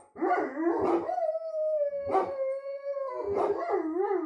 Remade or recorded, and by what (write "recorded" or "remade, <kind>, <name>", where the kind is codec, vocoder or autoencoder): recorded